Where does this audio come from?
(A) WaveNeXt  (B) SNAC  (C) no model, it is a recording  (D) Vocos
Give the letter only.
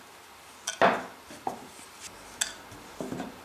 C